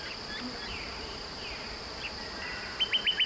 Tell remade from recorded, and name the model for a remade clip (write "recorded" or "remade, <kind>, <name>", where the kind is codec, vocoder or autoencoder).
recorded